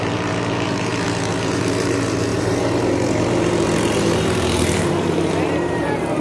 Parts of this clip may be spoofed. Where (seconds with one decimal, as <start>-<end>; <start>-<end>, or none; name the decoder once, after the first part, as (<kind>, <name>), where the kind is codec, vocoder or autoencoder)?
0.0-6.2 (vocoder, BigVGAN v2)